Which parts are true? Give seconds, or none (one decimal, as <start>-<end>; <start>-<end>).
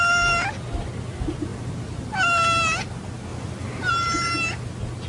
0.0-5.1